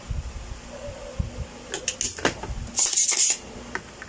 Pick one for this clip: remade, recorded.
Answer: recorded